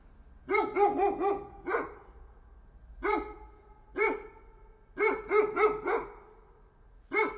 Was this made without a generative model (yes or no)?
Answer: yes